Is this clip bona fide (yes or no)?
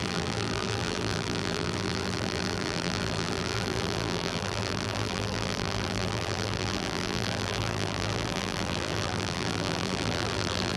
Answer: no